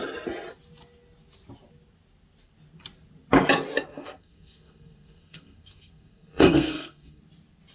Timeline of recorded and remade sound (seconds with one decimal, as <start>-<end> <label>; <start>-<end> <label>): 0.0-3.9 recorded; 3.9-7.2 remade; 7.2-7.7 recorded